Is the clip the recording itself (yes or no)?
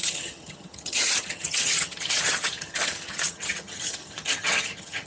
no